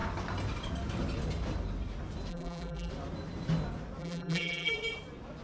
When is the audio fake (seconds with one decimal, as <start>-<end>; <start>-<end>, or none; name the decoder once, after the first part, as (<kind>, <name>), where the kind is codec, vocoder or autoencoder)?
2.3-2.9 (vocoder, BigVGAN v2); 4.0-4.7